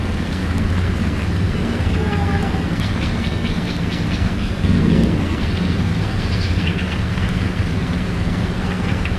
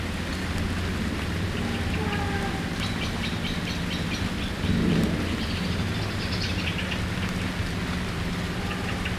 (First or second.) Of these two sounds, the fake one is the first